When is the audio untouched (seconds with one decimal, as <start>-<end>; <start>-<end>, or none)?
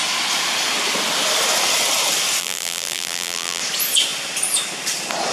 0.0-2.4; 3.6-5.3